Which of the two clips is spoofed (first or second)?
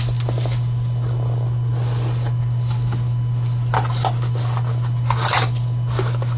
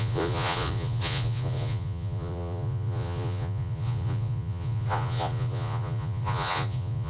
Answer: second